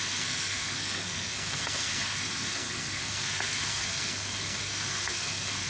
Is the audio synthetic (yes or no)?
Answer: yes